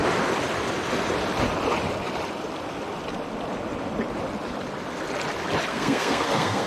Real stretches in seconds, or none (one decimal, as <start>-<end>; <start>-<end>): 0.0-5.7